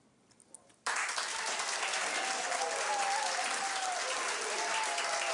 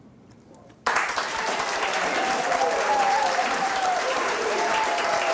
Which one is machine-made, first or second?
second